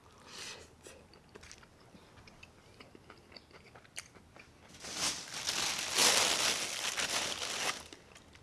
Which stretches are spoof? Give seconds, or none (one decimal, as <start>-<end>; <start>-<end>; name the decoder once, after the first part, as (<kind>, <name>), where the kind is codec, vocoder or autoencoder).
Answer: none